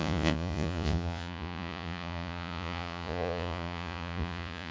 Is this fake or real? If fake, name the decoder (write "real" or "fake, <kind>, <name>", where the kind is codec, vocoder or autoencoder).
fake, vocoder, Vocos